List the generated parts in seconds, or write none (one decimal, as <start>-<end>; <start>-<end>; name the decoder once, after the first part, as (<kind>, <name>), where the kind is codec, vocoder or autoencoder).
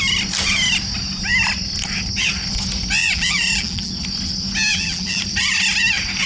3.0-3.9 (vocoder, BigVGAN v2); 4.7-5.2